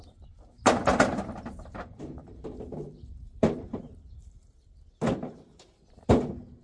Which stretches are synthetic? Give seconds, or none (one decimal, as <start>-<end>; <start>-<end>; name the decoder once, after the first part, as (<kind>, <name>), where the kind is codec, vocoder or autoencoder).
0.9-4.8 (vocoder, BigVGAN v2)